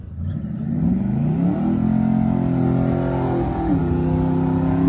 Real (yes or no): yes